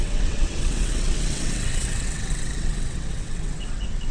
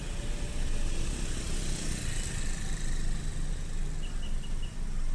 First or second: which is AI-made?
first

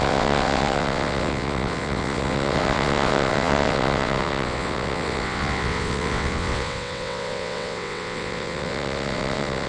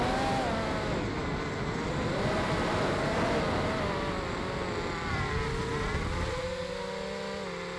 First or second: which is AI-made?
first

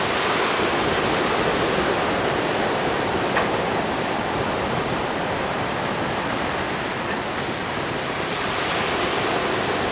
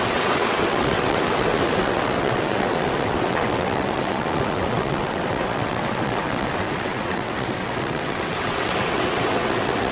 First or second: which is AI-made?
second